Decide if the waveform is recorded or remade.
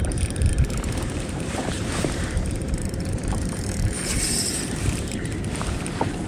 remade